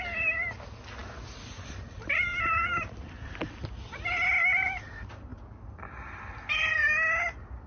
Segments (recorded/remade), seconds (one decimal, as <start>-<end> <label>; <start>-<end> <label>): 0.0-1.0 recorded; 1.0-4.1 remade; 4.1-7.7 recorded